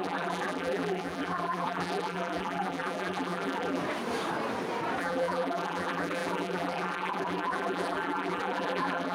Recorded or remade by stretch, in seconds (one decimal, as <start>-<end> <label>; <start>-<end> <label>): 0.0-3.8 remade; 3.8-5.0 recorded; 5.0-9.1 remade